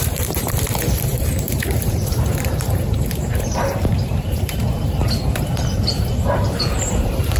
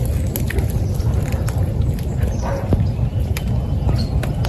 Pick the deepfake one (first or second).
first